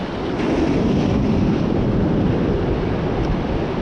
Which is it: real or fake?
real